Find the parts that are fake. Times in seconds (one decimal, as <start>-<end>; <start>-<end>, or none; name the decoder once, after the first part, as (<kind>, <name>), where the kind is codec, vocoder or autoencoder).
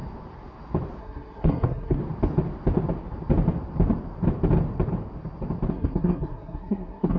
1.0-2.0 (codec, SNAC); 5.7-7.2